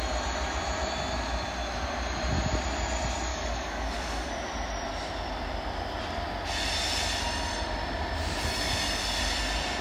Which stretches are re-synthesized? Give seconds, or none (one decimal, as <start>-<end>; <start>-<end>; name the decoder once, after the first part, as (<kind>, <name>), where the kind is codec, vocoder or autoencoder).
3.3-4.3 (codec, DAC)